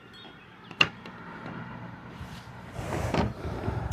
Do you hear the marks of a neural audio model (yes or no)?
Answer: yes